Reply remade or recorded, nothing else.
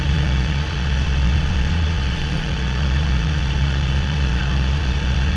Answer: remade